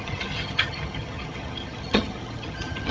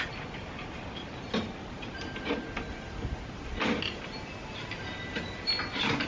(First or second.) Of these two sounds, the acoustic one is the second